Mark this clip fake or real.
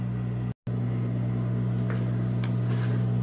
real